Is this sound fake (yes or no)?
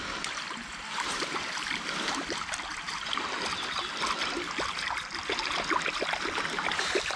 no